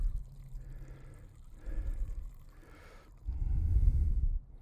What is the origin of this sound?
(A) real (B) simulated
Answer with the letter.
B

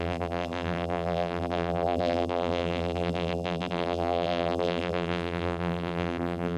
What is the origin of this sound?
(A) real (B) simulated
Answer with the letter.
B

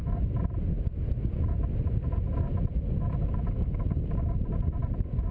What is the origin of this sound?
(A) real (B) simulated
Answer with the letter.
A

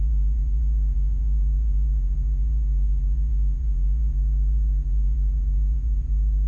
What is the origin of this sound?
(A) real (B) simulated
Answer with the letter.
B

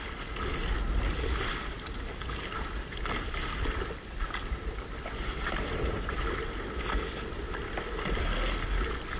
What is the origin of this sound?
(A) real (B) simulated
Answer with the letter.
A